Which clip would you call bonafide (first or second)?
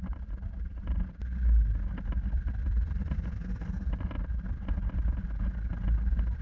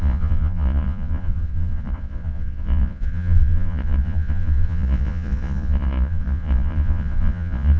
first